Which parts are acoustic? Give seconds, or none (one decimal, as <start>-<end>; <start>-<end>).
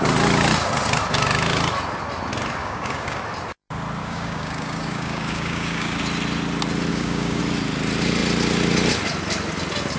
0.0-2.6; 3.2-4.0; 6.0-6.9; 7.4-10.0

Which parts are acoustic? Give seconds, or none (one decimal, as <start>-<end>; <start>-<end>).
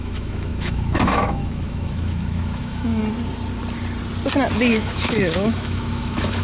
3.0-4.7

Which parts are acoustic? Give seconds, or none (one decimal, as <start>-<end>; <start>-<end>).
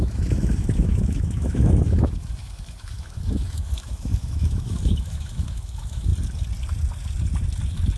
6.1-8.0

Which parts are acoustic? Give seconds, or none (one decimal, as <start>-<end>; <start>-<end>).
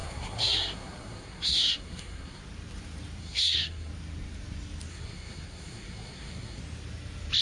2.4-3.2; 3.9-4.9; 6.6-7.4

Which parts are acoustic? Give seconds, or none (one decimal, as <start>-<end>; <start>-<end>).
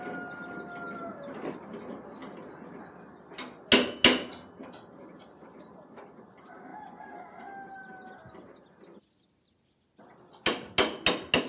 0.0-11.5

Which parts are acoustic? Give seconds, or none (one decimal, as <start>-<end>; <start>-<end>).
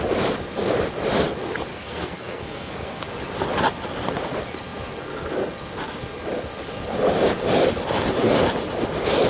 0.0-1.7; 3.0-9.3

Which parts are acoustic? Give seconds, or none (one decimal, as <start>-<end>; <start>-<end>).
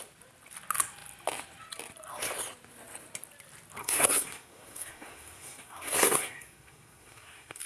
0.0-3.8